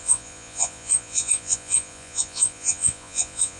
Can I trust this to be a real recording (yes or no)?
no